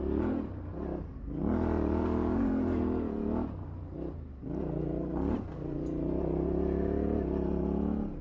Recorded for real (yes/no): yes